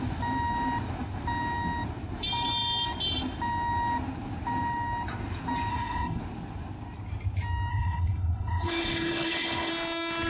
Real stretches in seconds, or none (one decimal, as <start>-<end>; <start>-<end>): 0.0-5.7; 6.2-7.7; 9.7-10.3